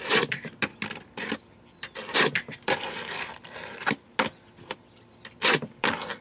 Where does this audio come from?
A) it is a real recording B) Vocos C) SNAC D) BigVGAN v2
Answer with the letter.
A